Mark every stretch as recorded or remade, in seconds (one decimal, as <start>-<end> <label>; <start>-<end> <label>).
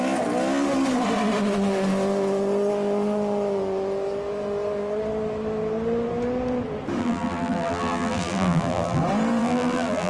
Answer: 0.0-7.0 recorded; 7.0-9.0 remade; 9.0-9.4 recorded; 9.4-10.1 remade